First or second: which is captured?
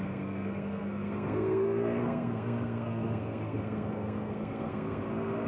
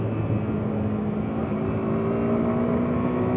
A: second